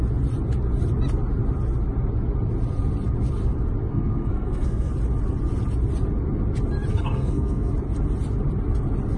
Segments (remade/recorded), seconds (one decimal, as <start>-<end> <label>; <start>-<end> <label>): 0.0-3.9 recorded; 3.9-4.9 remade; 4.9-6.9 recorded; 6.9-7.7 remade; 7.7-9.2 recorded

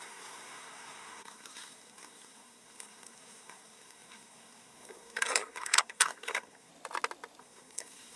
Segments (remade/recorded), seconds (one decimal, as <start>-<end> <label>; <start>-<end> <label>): 0.0-6.7 remade; 6.7-7.4 recorded; 7.4-8.2 remade